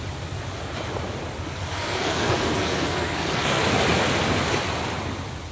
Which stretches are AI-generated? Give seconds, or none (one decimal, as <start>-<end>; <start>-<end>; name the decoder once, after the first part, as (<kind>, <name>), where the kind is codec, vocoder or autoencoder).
1.7-3.6 (codec, SNAC)